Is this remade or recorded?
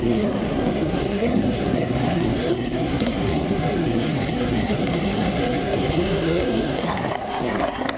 remade